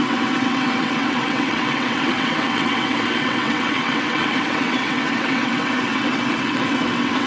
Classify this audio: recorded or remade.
remade